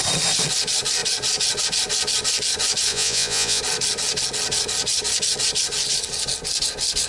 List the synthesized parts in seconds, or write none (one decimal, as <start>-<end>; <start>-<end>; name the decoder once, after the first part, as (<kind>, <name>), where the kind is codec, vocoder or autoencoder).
2.9-3.6 (vocoder, Vocos)